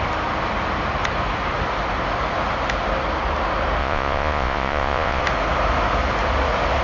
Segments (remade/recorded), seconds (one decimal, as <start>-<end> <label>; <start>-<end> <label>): 0.0-3.8 recorded; 3.8-5.2 remade; 5.2-6.8 recorded